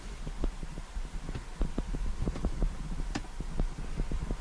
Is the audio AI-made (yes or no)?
no